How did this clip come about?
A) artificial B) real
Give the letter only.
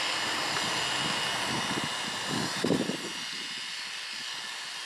B